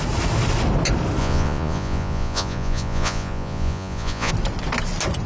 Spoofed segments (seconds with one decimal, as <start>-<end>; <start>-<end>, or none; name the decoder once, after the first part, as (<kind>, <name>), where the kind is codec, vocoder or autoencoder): 1.2-4.3 (vocoder, Vocos)